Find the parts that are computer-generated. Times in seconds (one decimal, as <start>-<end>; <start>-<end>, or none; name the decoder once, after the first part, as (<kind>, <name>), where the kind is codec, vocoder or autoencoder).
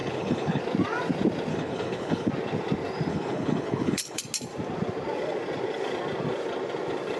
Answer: 0.0-0.6 (codec, HILCodec); 1.5-2.3; 3.1-4.2